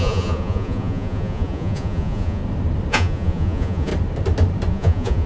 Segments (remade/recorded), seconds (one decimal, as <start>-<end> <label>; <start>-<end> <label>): 0.0-2.4 remade; 2.4-2.9 recorded; 2.9-3.9 remade; 3.9-4.7 recorded; 4.7-5.3 remade